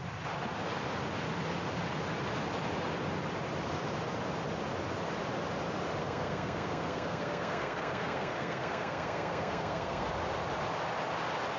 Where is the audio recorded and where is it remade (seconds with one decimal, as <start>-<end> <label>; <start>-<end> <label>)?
0.0-6.0 recorded; 6.0-10.1 remade; 10.1-11.6 recorded